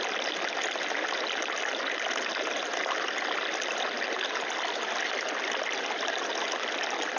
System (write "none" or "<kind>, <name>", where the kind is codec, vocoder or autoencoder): none